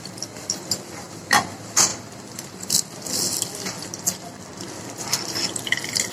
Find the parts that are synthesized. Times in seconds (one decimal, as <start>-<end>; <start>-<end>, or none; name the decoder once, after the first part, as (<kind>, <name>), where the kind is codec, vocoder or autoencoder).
none